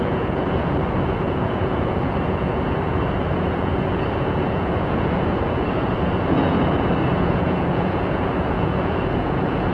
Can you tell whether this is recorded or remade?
remade